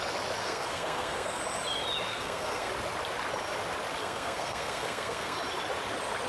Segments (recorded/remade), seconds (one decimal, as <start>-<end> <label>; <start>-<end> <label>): 0.0-0.4 recorded; 0.4-1.4 remade; 1.4-2.1 recorded; 2.1-2.7 remade; 2.7-4.0 recorded; 4.0-5.4 remade; 5.4-6.3 recorded